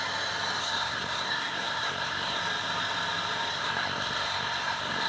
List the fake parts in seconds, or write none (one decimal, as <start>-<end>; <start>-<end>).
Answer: 0.6-2.4; 3.5-5.1